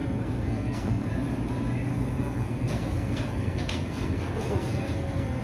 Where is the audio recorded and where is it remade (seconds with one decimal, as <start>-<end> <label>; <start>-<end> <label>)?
0.0-1.1 remade; 1.1-1.9 recorded; 1.9-5.4 remade